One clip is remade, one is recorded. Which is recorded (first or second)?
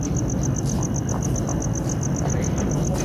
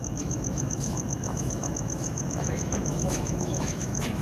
first